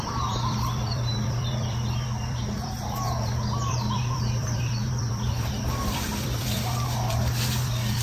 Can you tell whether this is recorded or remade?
remade